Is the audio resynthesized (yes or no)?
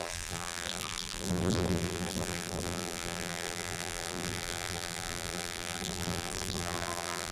yes